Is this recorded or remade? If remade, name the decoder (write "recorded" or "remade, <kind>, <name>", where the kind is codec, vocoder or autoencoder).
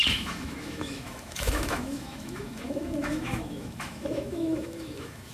remade, autoencoder, DAC-VAE